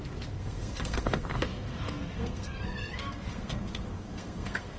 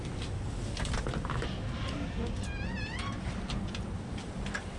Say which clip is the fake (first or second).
first